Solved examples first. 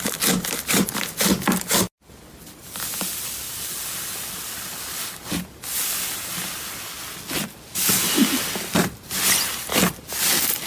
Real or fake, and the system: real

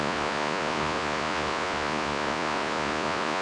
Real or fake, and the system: fake, vocoder, Vocos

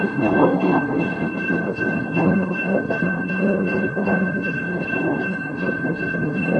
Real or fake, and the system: fake, codec, SNAC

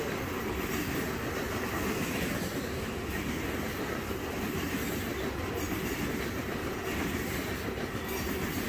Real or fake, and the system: real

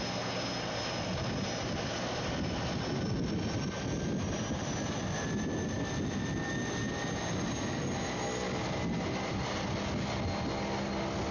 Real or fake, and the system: real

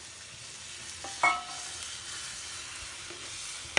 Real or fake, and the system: real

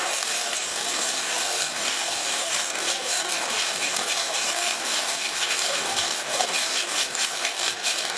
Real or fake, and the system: fake, codec, DAC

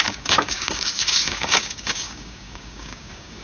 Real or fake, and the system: fake, codec, DAC